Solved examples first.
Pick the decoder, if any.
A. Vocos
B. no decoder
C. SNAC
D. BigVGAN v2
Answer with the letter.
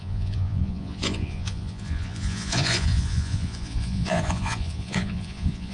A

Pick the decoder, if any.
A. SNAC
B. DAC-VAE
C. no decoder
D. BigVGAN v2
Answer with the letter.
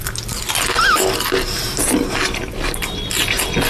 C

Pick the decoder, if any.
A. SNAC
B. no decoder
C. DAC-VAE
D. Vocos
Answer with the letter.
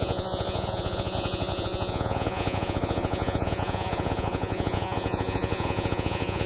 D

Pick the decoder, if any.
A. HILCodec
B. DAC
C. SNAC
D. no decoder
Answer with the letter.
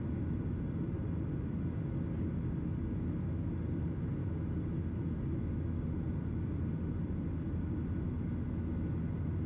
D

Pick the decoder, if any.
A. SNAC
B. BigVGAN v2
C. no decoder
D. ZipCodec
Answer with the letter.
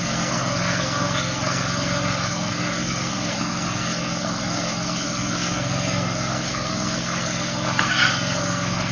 A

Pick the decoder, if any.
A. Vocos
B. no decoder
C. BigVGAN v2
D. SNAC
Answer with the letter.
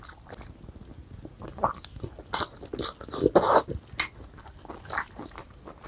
B